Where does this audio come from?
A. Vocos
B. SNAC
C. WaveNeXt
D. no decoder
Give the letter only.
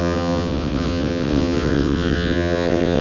C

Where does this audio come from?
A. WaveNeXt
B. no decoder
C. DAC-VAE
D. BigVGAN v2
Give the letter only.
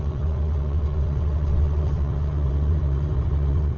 A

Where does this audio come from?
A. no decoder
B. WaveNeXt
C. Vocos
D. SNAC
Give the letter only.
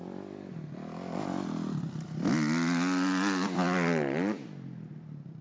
A